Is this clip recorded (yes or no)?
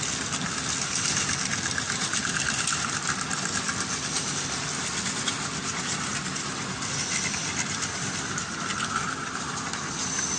yes